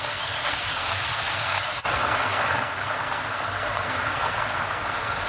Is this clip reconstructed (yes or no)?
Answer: yes